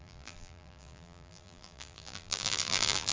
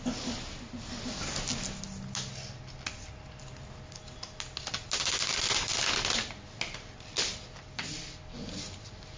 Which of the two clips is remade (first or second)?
first